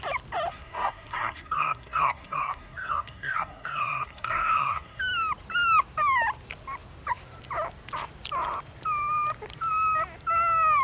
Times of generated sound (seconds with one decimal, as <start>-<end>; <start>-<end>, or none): 0.5-5.0